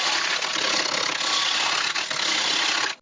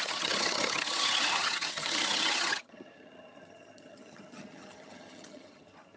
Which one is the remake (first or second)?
second